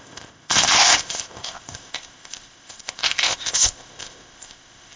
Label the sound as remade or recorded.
remade